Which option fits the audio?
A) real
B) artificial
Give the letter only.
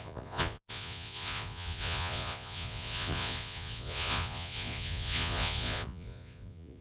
B